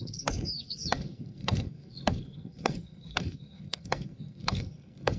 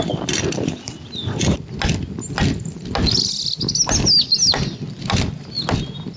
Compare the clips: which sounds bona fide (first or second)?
second